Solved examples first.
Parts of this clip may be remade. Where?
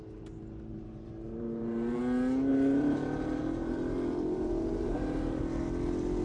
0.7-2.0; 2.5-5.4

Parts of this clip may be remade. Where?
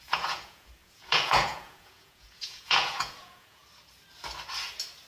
0.0-3.6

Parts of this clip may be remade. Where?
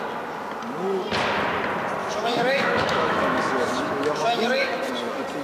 2.0-4.8